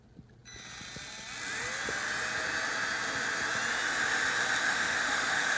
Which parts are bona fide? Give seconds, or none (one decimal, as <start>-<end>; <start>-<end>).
0.0-4.6